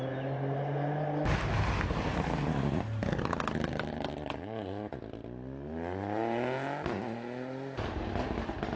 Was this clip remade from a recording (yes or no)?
no